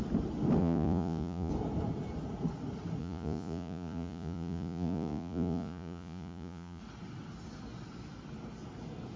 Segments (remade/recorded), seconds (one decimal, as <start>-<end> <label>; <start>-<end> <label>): 0.0-0.6 recorded; 0.6-1.5 remade; 1.5-3.0 recorded; 3.0-6.8 remade; 6.8-9.2 recorded